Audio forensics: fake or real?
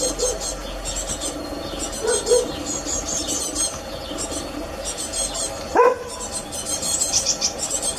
real